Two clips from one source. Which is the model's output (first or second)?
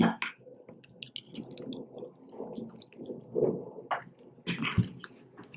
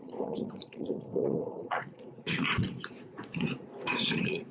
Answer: second